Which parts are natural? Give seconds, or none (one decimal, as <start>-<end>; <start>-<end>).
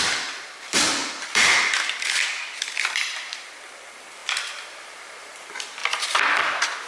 5.8-6.9